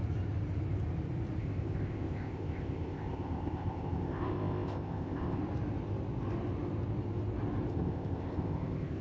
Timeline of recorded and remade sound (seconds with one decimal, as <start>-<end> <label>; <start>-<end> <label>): 0.0-1.4 recorded; 1.4-5.4 remade; 5.4-7.7 recorded; 7.7-9.0 remade